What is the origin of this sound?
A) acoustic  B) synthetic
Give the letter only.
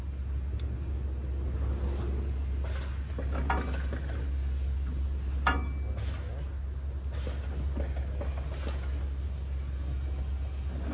A